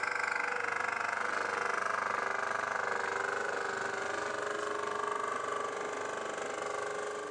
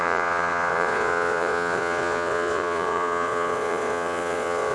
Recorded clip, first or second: first